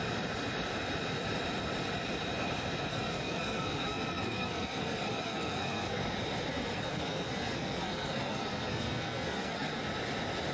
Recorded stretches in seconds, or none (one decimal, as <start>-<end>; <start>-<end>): 0.0-2.9; 6.0-6.5; 9.8-10.5